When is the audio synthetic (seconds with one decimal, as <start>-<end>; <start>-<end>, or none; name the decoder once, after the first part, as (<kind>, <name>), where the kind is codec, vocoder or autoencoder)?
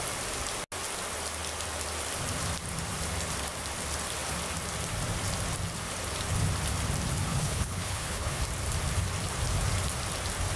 7.3-8.4 (codec, HILCodec)